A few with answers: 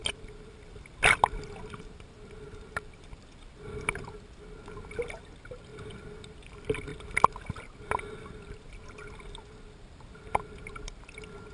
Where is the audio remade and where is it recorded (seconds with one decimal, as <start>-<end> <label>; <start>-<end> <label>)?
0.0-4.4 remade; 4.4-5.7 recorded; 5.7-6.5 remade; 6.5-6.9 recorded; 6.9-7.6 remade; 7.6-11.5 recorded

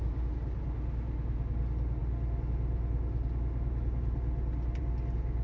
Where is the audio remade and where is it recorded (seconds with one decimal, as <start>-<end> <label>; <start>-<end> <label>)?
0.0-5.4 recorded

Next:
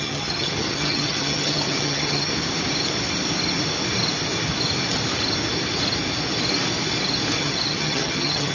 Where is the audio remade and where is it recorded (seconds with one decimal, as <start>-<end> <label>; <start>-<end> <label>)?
0.0-2.3 remade; 2.3-7.4 recorded; 7.4-8.5 remade

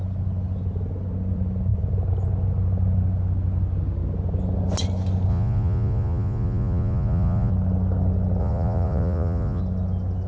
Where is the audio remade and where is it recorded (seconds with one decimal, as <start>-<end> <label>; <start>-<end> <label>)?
0.0-5.3 recorded; 5.3-7.5 remade; 7.5-8.4 recorded; 8.4-9.6 remade; 9.6-10.3 recorded

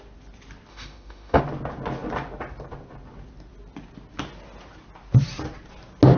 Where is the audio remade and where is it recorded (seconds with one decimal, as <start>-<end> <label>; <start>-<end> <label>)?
0.0-0.7 recorded; 0.7-1.4 remade; 1.4-6.2 recorded

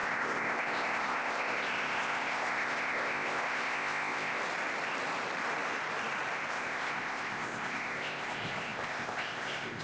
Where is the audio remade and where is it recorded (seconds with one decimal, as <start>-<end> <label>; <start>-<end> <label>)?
0.0-4.4 remade; 4.4-6.5 recorded; 6.5-9.8 remade